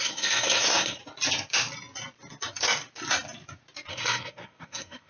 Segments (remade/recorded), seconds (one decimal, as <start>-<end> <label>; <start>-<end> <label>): 0.0-1.0 remade; 1.0-3.9 recorded; 3.9-5.1 remade